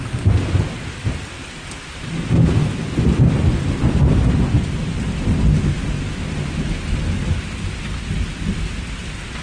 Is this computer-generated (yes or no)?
no